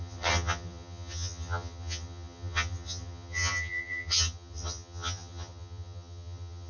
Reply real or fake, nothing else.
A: fake